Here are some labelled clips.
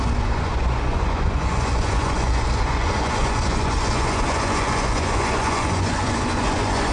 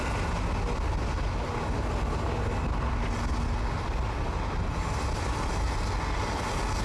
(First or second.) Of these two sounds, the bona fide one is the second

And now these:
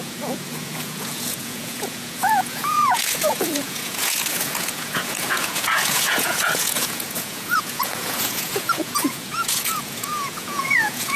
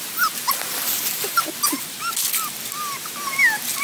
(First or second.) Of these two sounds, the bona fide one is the second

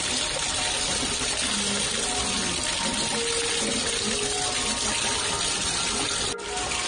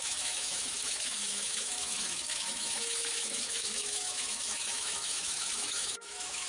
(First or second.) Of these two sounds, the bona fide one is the first